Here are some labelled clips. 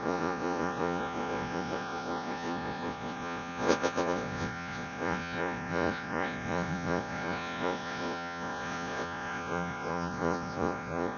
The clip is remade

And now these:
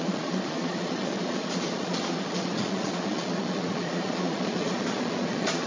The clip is remade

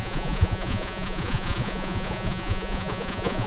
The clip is remade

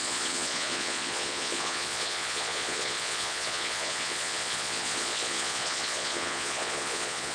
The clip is remade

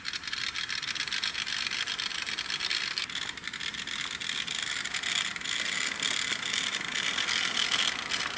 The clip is recorded